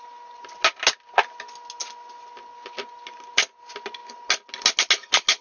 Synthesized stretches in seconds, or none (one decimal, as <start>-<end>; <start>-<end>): none